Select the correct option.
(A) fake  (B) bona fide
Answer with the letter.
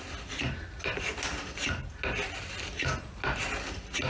B